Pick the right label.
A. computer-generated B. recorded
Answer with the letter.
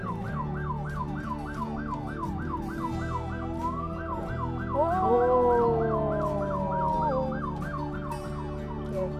B